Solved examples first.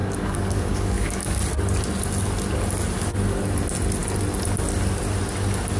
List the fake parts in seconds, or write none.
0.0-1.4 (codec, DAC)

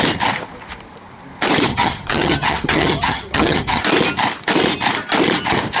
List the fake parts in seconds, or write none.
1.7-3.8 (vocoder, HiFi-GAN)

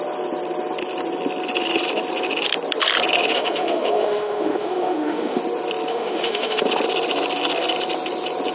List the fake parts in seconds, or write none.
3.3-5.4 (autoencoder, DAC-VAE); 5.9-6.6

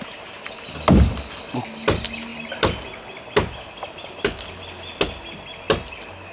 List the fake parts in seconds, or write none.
none